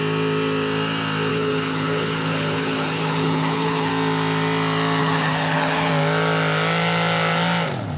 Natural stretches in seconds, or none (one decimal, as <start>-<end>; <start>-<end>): 0.0-1.3; 3.9-5.0; 5.9-8.0

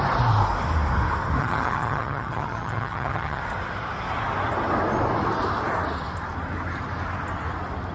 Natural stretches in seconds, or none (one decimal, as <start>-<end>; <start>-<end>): 0.0-1.4; 3.4-7.9